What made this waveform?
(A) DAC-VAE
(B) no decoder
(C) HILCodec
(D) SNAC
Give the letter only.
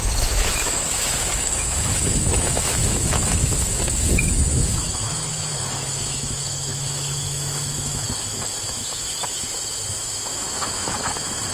A